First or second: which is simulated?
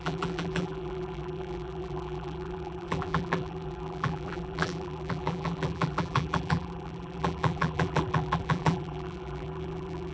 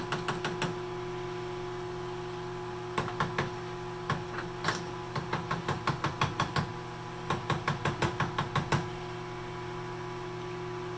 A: first